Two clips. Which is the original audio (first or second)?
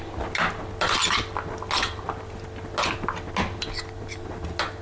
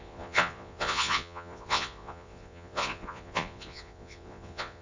first